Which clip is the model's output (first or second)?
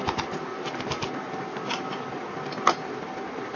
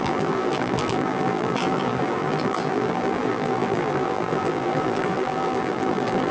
second